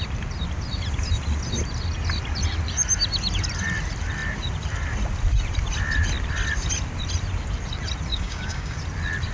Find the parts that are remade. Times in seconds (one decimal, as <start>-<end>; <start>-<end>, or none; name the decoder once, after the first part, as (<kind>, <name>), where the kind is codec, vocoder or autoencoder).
8.1-8.8 (codec, DAC)